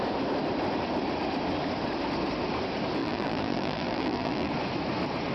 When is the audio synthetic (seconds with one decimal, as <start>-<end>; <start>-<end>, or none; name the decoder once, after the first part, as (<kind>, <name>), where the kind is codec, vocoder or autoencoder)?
3.0-4.5 (vocoder, BigVGAN v2)